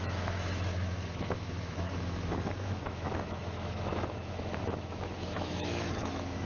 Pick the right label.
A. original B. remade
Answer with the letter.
B